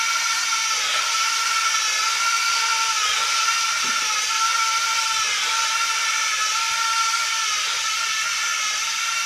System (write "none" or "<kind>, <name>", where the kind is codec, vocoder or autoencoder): none